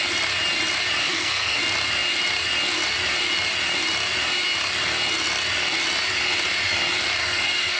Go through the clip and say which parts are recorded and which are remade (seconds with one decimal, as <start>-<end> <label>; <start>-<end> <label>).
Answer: 0.0-1.0 recorded; 1.0-1.6 remade; 1.6-7.2 recorded; 7.2-7.8 remade